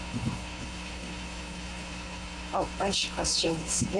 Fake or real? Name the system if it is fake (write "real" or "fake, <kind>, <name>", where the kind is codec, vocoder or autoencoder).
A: fake, codec, HILCodec